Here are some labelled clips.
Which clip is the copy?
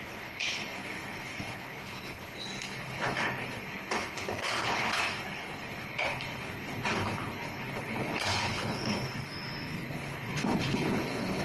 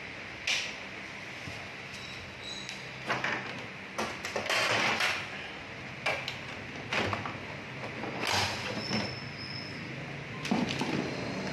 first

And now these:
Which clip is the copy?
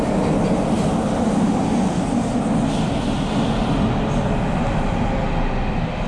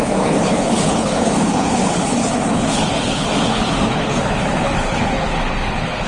second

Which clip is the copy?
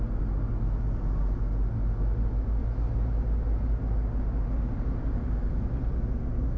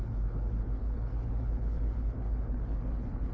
second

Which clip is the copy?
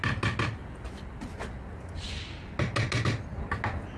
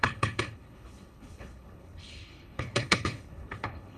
second